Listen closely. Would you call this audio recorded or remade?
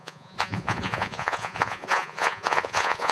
remade